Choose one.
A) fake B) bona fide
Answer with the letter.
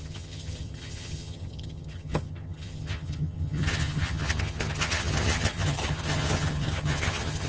A